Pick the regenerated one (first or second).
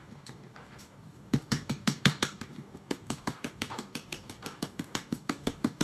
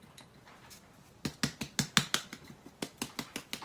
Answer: first